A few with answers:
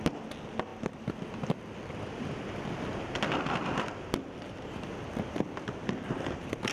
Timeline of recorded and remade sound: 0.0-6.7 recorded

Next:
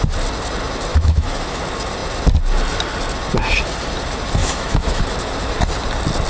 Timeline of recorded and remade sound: 0.0-0.9 recorded; 0.9-1.6 remade; 1.6-4.4 recorded; 4.4-5.0 remade; 5.0-6.3 recorded

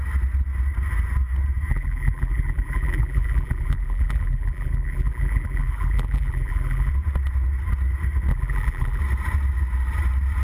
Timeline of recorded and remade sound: 0.0-1.7 recorded; 1.7-6.9 remade; 6.9-8.3 recorded; 8.3-9.0 remade; 9.0-10.4 recorded

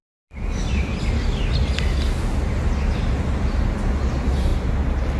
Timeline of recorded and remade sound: 0.0-5.2 recorded